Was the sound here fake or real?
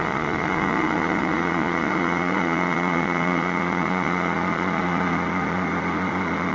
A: fake